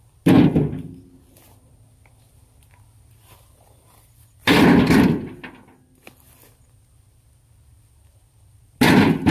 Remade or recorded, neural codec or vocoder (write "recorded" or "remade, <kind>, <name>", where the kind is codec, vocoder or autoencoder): recorded